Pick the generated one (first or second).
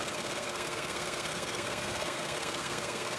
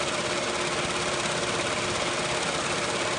first